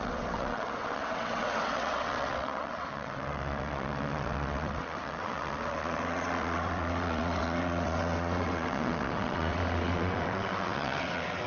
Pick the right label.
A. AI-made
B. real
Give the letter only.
A